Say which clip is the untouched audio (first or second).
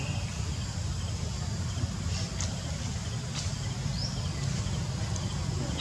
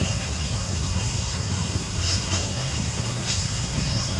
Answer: first